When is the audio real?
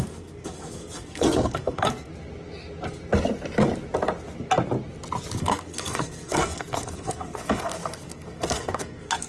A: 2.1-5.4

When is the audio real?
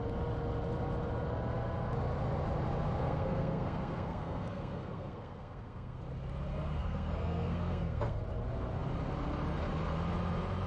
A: 0.0-3.0; 6.1-6.8; 8.2-10.7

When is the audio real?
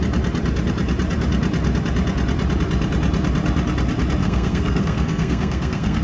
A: 0.0-4.2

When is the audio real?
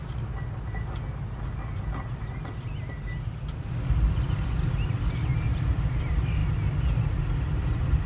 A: 0.0-8.1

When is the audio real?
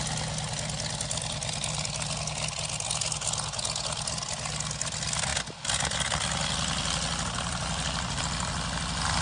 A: 0.0-9.2